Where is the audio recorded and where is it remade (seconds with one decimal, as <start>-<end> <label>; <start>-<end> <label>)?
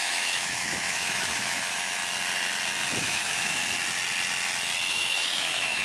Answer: 0.0-2.0 remade; 2.0-3.0 recorded; 3.0-3.6 remade; 3.6-4.9 recorded; 4.9-5.8 remade